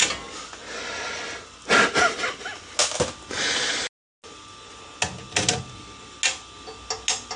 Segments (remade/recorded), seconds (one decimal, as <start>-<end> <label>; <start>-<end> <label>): 0.0-7.4 recorded